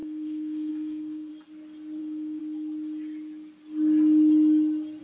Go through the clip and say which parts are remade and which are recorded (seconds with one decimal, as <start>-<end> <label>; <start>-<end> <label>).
0.0-1.3 remade; 1.3-2.0 recorded; 2.0-2.4 remade; 2.4-5.0 recorded